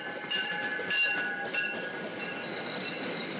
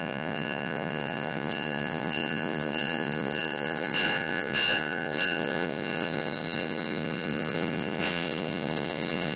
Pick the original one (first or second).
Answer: first